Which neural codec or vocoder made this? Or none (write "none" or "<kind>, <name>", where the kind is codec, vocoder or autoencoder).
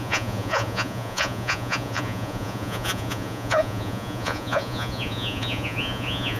vocoder, Vocos